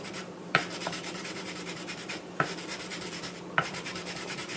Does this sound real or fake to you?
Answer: fake